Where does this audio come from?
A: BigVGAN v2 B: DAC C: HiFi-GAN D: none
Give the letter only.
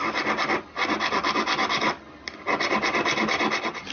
D